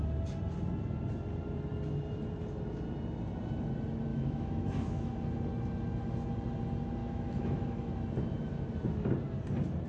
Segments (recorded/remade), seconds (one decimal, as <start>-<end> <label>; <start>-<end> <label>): 0.0-4.1 recorded; 4.1-5.1 remade; 5.1-7.0 recorded; 7.0-7.9 remade; 7.9-9.9 recorded